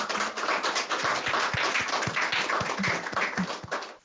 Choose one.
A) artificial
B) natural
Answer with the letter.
B